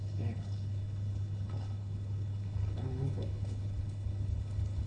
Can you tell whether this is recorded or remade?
remade